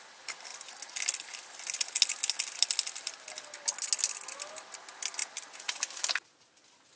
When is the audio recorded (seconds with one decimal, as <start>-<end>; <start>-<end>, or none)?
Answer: 0.0-7.0

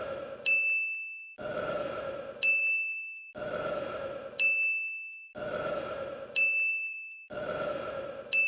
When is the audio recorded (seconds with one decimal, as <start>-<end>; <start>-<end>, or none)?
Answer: 0.0-2.6; 3.3-6.7; 7.7-8.5

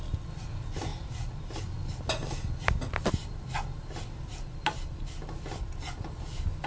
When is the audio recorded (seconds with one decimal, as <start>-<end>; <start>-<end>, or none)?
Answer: 0.0-0.9; 1.6-6.7

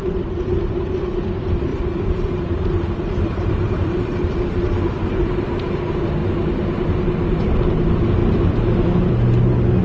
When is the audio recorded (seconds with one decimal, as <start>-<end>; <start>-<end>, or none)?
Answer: 0.0-1.7; 4.4-9.8

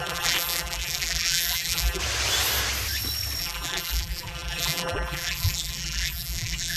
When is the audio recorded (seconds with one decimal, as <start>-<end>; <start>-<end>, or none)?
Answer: 2.0-3.4

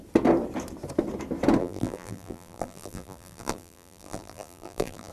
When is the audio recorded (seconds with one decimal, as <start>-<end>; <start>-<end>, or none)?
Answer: 0.0-1.6

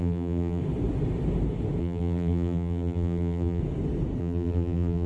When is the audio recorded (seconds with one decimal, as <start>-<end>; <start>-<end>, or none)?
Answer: 0.6-1.8; 3.6-4.2